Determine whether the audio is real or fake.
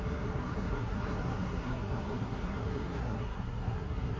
fake